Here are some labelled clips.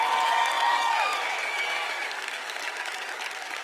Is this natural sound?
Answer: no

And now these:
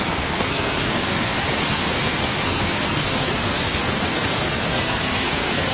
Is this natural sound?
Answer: no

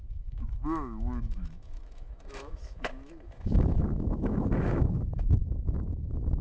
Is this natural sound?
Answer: no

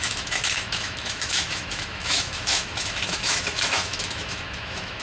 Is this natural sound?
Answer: no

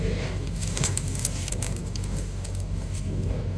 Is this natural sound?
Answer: no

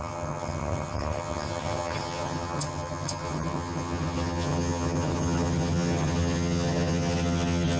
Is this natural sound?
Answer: no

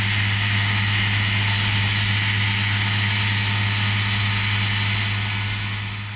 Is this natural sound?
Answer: yes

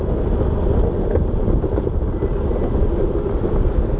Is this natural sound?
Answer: yes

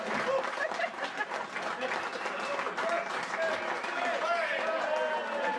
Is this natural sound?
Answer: yes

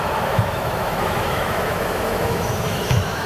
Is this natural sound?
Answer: no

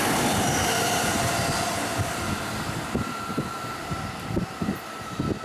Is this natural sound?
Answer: yes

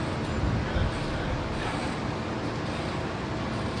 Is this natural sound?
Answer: yes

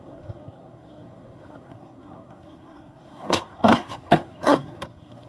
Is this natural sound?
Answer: no